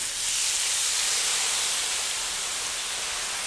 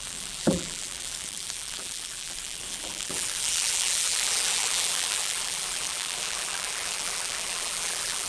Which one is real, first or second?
first